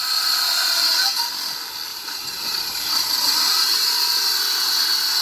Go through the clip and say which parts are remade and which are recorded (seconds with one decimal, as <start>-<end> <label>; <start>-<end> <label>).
0.0-1.9 recorded; 1.9-4.2 remade; 4.2-5.2 recorded